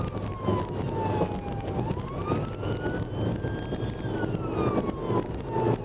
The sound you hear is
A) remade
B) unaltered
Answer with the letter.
B